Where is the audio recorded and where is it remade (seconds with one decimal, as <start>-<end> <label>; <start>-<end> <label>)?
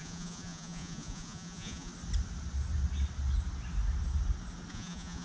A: 0.0-1.9 remade; 1.9-4.7 recorded; 4.7-5.2 remade